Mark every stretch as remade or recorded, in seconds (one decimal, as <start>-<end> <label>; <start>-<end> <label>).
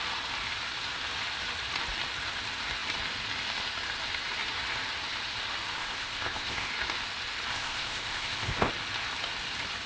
0.0-5.8 recorded; 5.8-6.7 remade; 6.7-7.5 recorded; 7.5-8.7 remade; 8.7-9.9 recorded